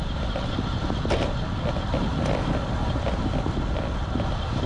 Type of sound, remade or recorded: recorded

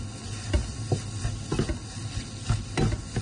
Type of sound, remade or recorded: recorded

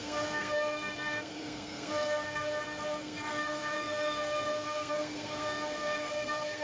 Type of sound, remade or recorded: remade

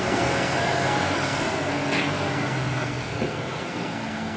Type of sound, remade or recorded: remade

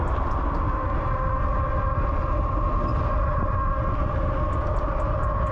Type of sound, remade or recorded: recorded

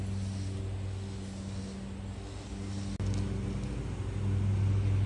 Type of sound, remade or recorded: recorded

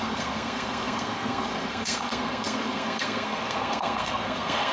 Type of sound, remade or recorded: remade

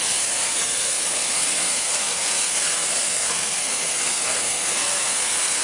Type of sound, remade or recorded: remade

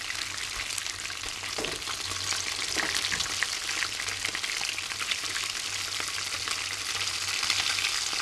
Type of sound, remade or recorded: recorded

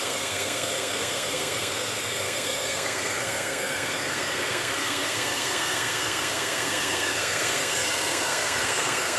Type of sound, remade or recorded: remade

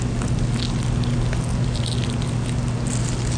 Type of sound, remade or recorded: recorded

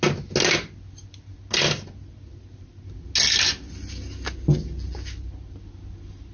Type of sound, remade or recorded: recorded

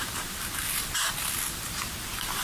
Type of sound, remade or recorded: recorded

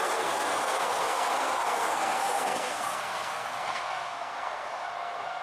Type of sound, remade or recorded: remade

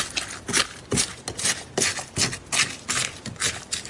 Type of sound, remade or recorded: recorded